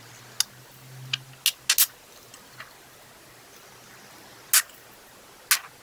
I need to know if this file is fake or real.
real